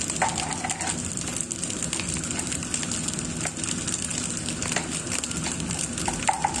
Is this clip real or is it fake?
real